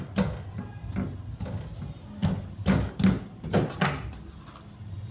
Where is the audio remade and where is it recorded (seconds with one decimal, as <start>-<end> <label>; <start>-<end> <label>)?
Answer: 0.0-5.1 recorded